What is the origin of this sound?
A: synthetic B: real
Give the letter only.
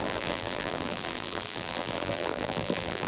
A